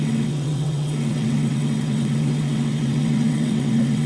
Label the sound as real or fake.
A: fake